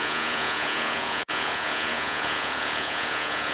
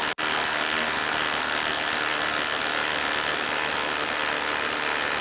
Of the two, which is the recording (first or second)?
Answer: second